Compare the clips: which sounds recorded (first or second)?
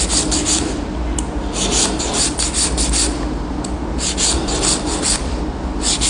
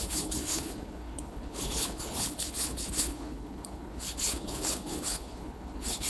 first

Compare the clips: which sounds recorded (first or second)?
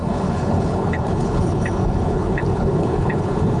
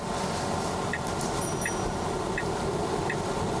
second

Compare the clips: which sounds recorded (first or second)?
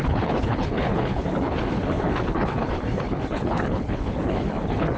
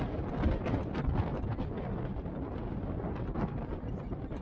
second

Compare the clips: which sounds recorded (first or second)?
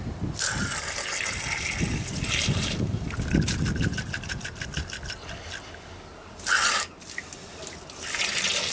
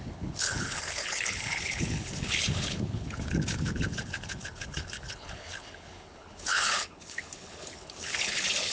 first